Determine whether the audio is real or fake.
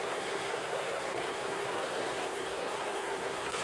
fake